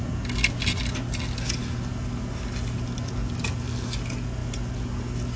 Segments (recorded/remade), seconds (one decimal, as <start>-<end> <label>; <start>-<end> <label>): 0.0-5.4 recorded

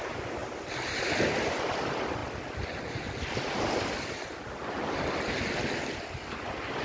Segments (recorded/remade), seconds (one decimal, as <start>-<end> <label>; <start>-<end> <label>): 0.0-6.8 recorded

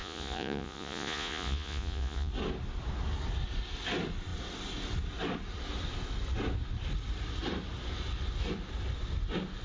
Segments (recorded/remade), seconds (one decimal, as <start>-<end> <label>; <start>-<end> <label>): 0.0-2.3 remade; 2.3-9.6 recorded

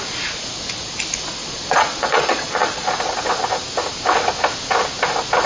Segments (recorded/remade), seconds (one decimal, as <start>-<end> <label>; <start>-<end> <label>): 0.0-1.4 recorded; 1.4-2.9 remade; 2.9-5.5 recorded

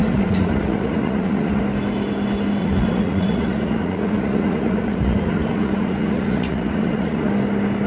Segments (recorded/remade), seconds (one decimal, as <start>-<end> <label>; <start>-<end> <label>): 0.0-1.6 remade; 1.6-2.6 recorded; 2.6-7.3 remade; 7.3-7.9 recorded